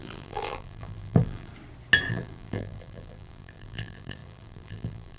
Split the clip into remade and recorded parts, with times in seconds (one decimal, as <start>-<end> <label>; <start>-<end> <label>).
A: 0.0-1.5 remade; 1.5-2.1 recorded; 2.1-5.2 remade